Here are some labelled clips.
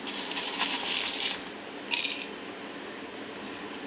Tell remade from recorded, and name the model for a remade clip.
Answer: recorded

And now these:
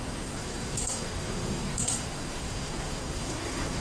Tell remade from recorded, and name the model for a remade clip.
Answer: remade, codec, SNAC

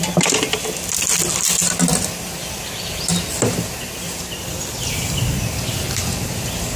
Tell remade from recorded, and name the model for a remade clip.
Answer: recorded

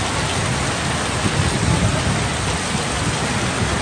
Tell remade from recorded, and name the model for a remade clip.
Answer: recorded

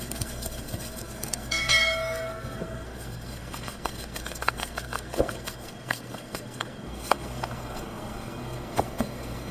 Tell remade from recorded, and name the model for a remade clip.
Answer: remade, codec, SNAC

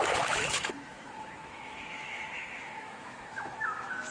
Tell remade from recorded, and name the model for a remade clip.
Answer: remade, autoencoder, DAC-VAE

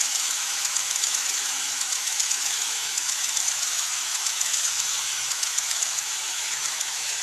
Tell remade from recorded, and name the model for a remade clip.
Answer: remade, autoencoder, DAC-VAE